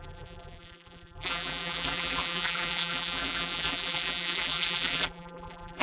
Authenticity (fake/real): fake